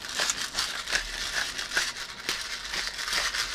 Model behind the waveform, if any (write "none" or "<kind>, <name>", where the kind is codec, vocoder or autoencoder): none